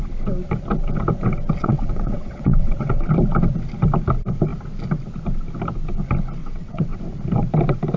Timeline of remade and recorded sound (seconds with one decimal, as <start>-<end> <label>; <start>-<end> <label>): 0.0-1.6 recorded; 1.6-3.1 remade; 3.1-6.4 recorded; 6.4-7.0 remade; 7.0-8.0 recorded